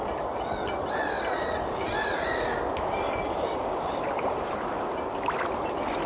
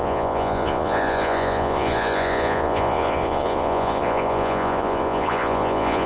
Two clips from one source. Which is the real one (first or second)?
first